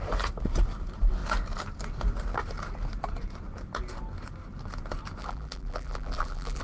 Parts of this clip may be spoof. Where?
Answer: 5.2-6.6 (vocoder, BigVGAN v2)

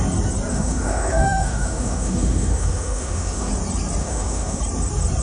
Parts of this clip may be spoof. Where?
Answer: 0.5-3.5 (autoencoder, DAC-VAE); 4.0-4.6

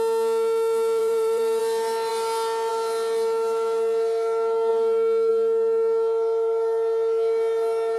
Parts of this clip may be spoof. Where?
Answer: 1.0-1.6 (vocoder, BigVGAN v2)

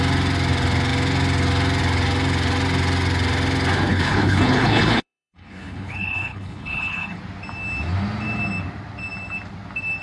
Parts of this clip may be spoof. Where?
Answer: 3.9-7.2 (codec, HILCodec)

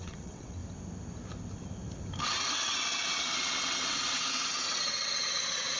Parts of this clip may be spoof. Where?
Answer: 0.0-0.6 (vocoder, WaveNeXt); 2.5-5.8

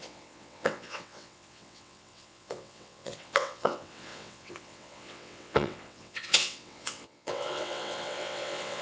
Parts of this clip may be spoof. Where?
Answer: 0.0-8.8 (vocoder, WaveNeXt)

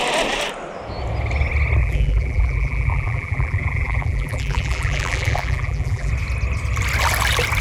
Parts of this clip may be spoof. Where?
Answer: 1.8-6.1 (vocoder, BigVGAN v2)

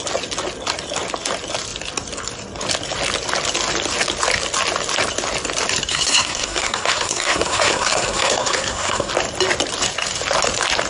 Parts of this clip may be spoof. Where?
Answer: 5.9-9.1 (codec, SNAC)